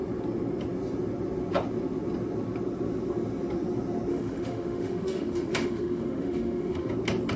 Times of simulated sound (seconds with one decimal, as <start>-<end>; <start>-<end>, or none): 4.1-6.9